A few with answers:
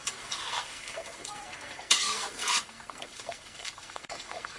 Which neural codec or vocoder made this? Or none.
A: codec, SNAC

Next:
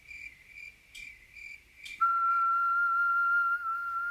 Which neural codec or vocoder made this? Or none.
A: none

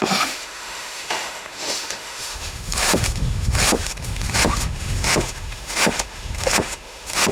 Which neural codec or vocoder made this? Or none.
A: autoencoder, DAC-VAE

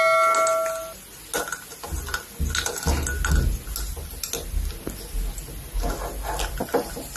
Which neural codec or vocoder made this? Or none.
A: none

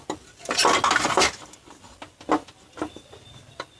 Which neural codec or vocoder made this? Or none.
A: none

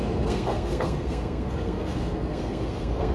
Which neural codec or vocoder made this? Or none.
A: codec, SNAC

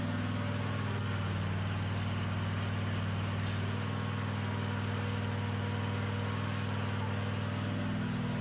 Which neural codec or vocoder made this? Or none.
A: none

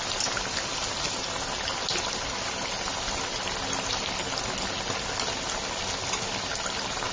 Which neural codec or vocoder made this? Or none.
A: none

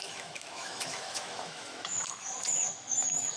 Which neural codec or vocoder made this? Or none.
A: autoencoder, DAC-VAE